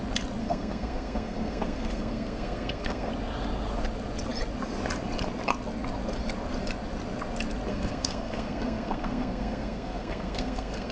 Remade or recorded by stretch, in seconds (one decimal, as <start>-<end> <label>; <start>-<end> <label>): 0.0-0.4 recorded; 0.4-3.1 remade; 3.1-7.7 recorded; 7.7-10.9 remade